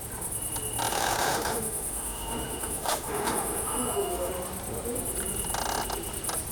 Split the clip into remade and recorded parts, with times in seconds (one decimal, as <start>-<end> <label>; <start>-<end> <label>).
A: 0.0-0.9 recorded; 0.9-4.3 remade; 4.3-6.5 recorded